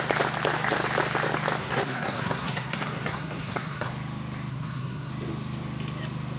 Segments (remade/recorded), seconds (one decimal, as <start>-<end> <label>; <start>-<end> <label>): 0.0-1.6 recorded; 1.6-3.9 remade; 3.9-4.5 recorded; 4.5-5.1 remade; 5.1-6.4 recorded